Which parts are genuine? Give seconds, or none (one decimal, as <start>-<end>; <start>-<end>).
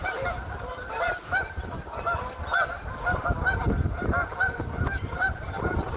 1.6-5.2